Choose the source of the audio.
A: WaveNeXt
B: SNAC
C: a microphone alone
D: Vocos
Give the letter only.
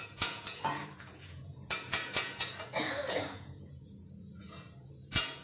D